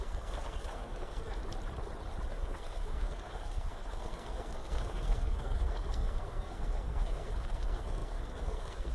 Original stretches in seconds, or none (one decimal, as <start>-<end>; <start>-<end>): 1.4-2.3